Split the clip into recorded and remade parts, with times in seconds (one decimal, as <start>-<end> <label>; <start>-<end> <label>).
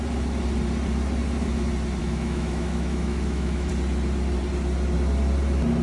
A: 0.0-2.0 recorded; 2.0-3.7 remade; 3.7-5.8 recorded